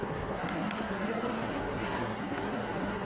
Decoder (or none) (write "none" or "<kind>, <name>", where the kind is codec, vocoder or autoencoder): codec, SNAC